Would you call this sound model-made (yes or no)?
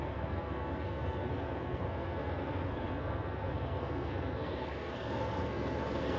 yes